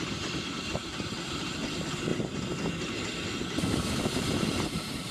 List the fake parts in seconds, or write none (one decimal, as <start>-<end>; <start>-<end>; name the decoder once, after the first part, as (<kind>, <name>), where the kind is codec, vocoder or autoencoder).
0.0-2.1 (vocoder, BigVGAN v2); 4.0-5.1